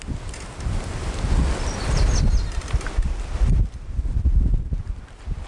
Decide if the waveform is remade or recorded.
recorded